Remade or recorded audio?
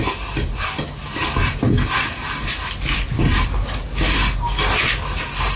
recorded